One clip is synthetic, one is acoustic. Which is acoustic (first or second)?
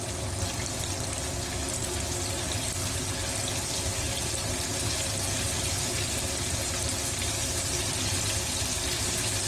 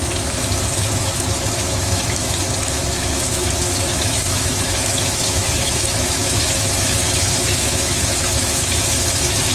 first